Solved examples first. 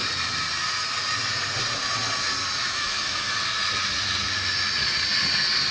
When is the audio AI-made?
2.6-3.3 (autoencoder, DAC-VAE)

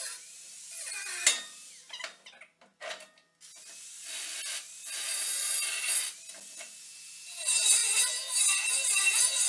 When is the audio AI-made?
none

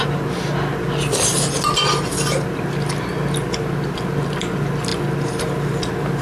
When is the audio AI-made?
none